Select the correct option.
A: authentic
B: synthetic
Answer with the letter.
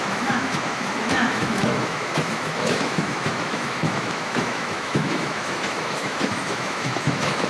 B